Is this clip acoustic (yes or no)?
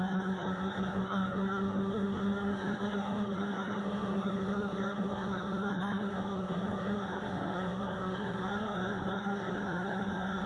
no